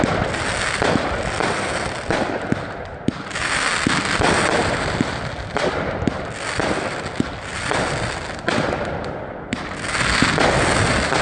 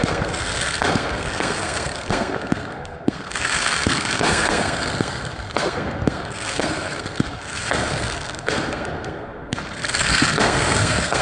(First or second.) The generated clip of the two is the second